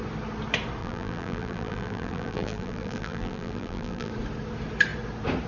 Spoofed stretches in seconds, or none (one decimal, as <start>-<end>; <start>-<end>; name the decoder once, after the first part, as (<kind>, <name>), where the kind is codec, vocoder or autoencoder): 0.8-4.1 (vocoder, BigVGAN v2)